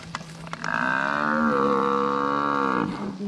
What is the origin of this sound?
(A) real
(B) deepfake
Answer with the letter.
A